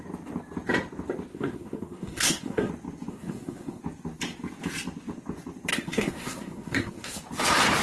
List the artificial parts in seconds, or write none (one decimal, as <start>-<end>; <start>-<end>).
1.3-2.7; 3.1-3.8; 5.7-7.2